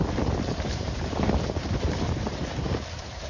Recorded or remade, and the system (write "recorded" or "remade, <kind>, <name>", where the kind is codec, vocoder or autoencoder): remade, vocoder, BigVGAN v2